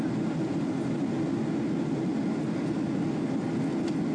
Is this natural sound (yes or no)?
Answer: yes